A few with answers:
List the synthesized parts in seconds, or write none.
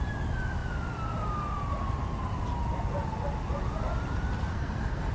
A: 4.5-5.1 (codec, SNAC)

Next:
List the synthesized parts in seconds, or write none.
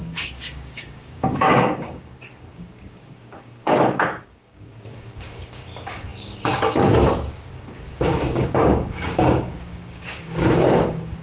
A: 0.0-11.2 (codec, DAC)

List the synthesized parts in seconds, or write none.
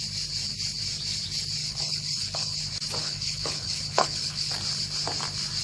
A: 1.6-2.6 (codec, HILCodec); 3.0-4.5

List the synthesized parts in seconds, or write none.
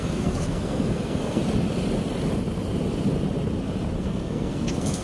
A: 0.0-1.4 (codec, SNAC); 4.0-5.0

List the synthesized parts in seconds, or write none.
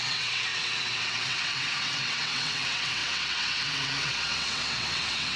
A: 0.0-5.4 (vocoder, WaveNeXt)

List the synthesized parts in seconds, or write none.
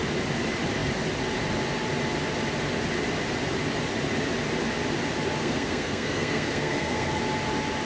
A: 5.4-7.2 (codec, SNAC)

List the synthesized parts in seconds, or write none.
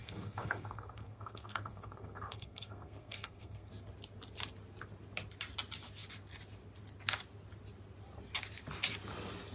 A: 0.0-3.7 (codec, SNAC)